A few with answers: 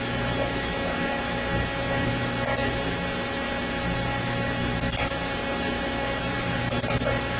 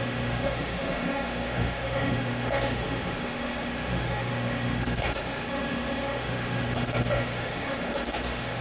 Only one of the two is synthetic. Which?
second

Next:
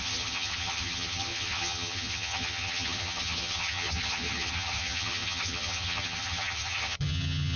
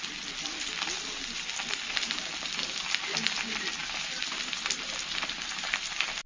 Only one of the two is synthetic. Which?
first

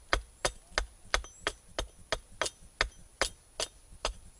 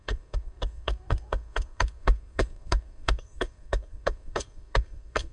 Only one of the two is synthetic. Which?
second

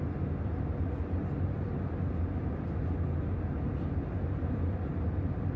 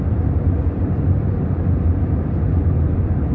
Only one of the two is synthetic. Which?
second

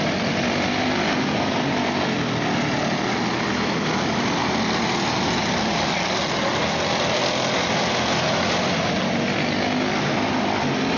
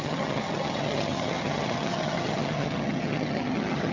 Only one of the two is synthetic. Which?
second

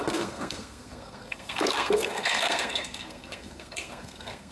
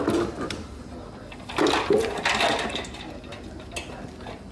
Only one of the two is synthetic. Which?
first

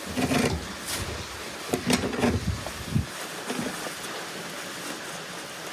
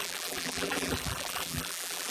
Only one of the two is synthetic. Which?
second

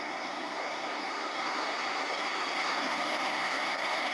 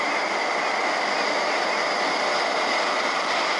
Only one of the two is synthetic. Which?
first